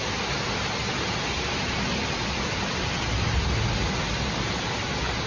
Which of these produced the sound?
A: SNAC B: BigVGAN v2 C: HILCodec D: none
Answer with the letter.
D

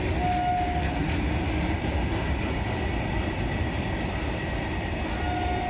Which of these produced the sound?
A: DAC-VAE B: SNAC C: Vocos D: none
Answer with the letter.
D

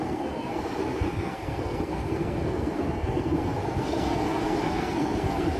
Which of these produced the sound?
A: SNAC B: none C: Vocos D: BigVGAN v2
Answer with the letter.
A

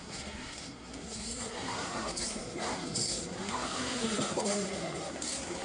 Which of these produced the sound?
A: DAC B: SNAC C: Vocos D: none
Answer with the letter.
B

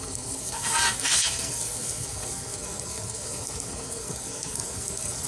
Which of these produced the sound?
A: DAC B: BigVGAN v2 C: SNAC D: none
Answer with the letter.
C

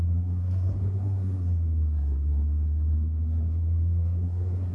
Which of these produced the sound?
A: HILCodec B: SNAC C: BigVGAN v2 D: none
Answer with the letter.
B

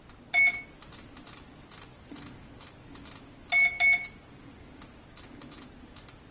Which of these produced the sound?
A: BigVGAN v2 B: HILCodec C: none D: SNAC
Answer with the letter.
C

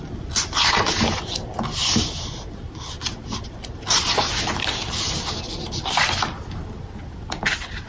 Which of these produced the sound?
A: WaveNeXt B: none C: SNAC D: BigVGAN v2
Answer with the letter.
B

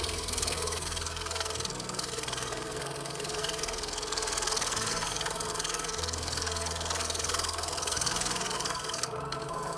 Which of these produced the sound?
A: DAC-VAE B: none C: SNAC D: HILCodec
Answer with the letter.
C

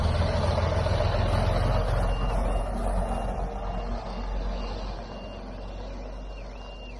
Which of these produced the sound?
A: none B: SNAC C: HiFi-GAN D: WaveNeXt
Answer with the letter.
A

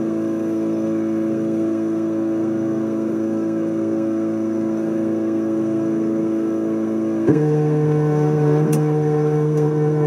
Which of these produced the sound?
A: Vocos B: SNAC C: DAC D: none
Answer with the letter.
B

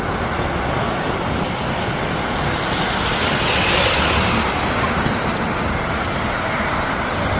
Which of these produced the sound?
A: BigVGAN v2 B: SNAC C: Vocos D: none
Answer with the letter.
D